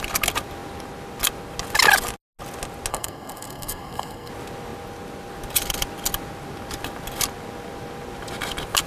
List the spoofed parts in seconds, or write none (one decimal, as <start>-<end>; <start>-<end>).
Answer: 2.9-4.3